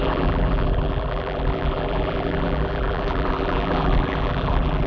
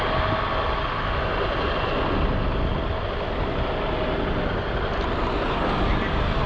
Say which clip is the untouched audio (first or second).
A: second